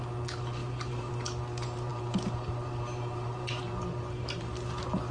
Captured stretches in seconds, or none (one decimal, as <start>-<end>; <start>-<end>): 0.0-0.6; 1.1-1.9